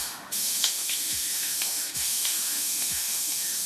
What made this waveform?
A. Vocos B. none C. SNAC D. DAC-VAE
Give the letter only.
D